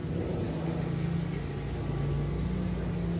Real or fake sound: real